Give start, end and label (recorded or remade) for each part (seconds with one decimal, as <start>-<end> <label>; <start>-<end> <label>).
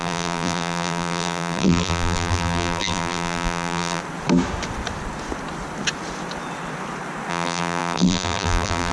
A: 0.0-4.0 remade; 4.0-7.3 recorded; 7.3-8.9 remade